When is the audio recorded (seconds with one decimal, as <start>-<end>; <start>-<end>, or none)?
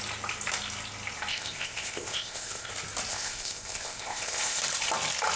0.0-1.3; 2.7-3.1; 4.6-5.4